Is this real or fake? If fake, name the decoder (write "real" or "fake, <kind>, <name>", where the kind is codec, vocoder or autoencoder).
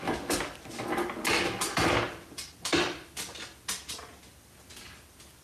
real